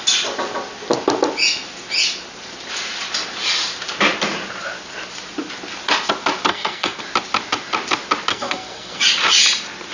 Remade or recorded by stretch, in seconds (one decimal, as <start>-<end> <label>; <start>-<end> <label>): 0.0-6.5 recorded; 6.5-7.0 remade; 7.0-8.3 recorded; 8.3-9.0 remade; 9.0-9.9 recorded